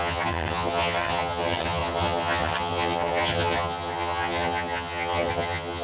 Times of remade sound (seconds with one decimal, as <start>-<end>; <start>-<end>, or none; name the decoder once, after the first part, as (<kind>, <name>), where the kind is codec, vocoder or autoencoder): 0.0-5.8 (vocoder, HiFi-GAN)